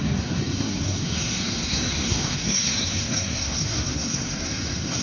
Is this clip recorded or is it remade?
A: remade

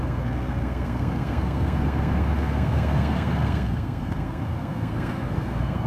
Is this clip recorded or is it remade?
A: remade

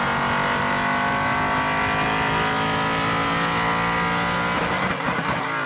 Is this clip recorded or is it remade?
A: recorded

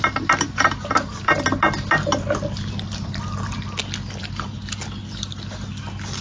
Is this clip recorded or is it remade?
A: recorded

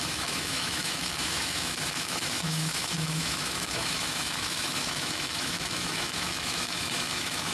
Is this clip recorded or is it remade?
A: remade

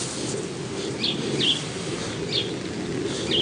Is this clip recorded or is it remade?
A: recorded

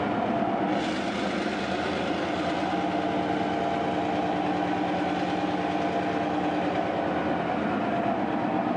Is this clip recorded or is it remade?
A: recorded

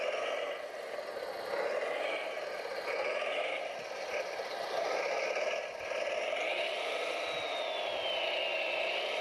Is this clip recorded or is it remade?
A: recorded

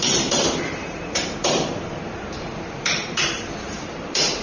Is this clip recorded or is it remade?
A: remade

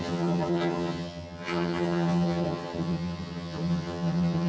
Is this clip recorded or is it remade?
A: remade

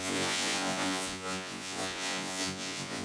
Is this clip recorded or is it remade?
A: remade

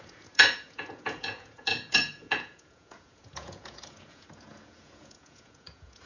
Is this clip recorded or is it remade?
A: remade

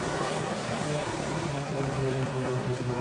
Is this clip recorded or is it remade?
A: remade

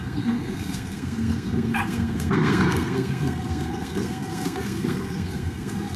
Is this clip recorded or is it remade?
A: remade